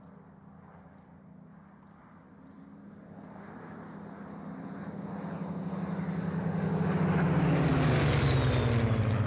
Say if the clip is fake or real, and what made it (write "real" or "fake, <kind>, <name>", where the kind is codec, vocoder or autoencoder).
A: real